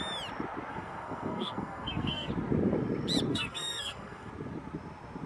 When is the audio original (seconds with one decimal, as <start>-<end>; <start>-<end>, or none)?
0.0-0.7; 2.3-3.3; 4.3-5.3